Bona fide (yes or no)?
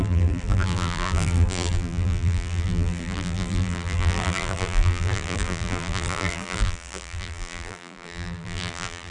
no